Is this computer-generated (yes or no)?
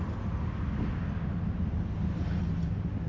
no